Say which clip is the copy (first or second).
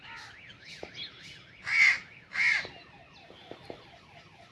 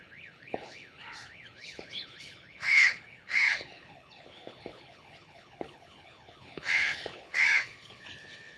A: second